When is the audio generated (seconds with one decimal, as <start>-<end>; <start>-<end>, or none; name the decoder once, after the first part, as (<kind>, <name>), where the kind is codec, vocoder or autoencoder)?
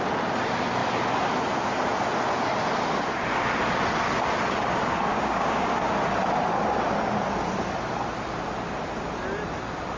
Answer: 5.1-5.7 (codec, DAC)